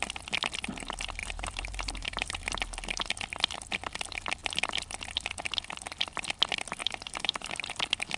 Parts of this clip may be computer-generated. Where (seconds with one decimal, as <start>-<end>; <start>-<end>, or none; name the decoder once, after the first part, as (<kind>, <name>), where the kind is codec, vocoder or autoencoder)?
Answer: 1.2-2.4 (vocoder, BigVGAN v2); 6.8-7.5